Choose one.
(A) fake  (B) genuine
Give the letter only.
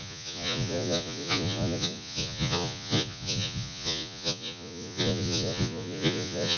A